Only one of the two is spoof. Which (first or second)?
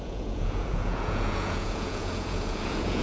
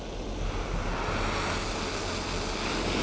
first